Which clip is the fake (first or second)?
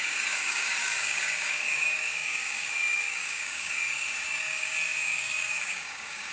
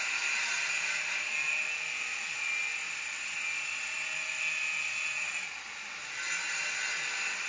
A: first